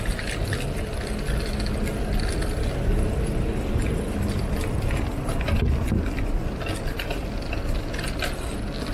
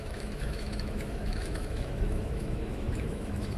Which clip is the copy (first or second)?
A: second